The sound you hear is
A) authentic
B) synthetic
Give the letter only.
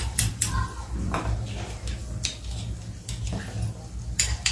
B